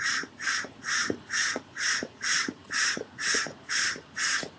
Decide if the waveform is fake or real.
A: fake